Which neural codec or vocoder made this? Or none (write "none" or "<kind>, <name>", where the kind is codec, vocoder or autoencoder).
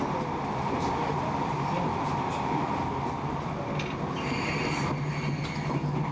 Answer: none